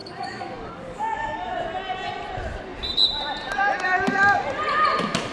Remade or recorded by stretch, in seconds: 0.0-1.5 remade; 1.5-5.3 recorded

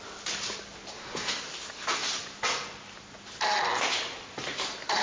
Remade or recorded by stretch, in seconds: 0.0-0.9 recorded; 0.9-1.5 remade; 1.5-5.0 recorded

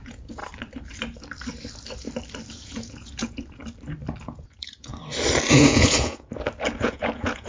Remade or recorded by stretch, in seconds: 0.0-0.4 remade; 0.4-2.5 recorded; 2.5-3.6 remade; 3.6-4.2 recorded; 4.2-4.9 remade; 4.9-5.5 recorded; 5.5-6.3 remade; 6.3-6.8 recorded; 6.8-7.5 remade

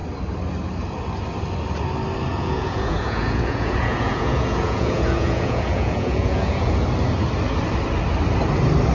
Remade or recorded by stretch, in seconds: 0.0-2.3 recorded; 2.3-6.7 remade; 6.7-8.9 recorded

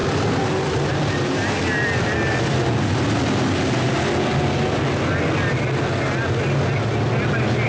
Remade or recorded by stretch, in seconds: 0.0-3.0 remade; 3.0-7.7 recorded

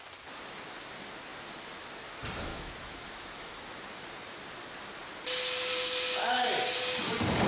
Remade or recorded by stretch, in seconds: 0.0-2.5 recorded; 2.5-3.7 remade; 3.7-7.5 recorded

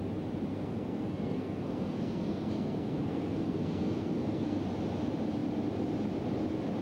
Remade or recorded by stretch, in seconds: 0.0-0.5 recorded; 0.5-4.6 remade; 4.6-6.8 recorded

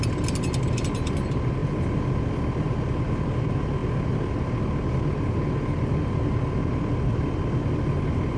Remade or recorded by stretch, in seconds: 0.0-8.4 recorded